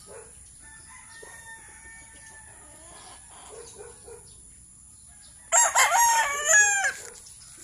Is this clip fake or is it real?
real